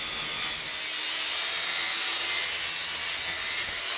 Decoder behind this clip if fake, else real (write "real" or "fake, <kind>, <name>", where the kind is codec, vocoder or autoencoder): real